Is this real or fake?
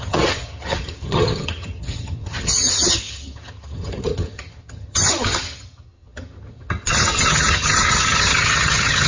fake